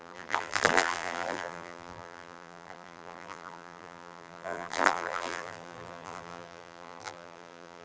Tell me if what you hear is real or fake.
fake